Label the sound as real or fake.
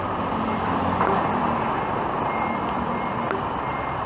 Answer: fake